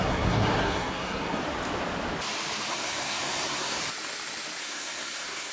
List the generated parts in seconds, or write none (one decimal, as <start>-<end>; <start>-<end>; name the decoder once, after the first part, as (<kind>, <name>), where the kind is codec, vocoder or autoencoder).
0.0-1.4 (codec, SNAC); 2.7-3.8; 4.6-5.5